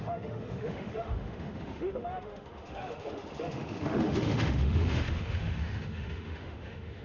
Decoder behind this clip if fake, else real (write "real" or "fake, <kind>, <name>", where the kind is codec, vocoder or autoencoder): fake, autoencoder, DAC-VAE